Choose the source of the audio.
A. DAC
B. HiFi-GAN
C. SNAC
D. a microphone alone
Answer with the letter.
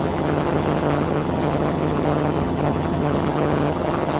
B